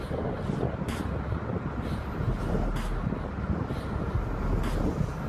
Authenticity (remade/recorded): recorded